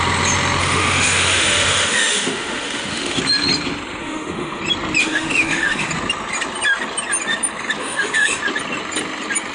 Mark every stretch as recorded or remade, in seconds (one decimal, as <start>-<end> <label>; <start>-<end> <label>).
0.0-0.6 recorded; 0.6-3.2 remade; 3.2-4.0 recorded; 4.0-4.6 remade; 4.6-5.0 recorded; 5.0-5.9 remade; 5.9-7.8 recorded; 7.8-8.4 remade; 8.4-9.5 recorded